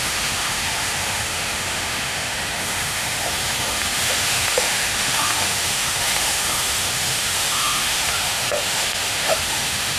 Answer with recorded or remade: remade